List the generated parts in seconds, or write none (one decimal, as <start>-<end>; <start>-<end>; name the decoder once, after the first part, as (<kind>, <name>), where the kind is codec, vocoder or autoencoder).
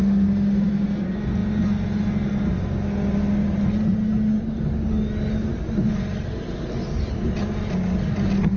none